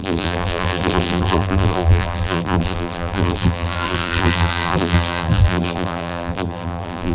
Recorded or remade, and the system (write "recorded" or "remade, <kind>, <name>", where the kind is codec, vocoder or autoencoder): remade, vocoder, BigVGAN v2